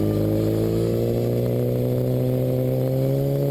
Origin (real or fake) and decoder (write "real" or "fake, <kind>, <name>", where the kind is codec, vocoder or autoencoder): real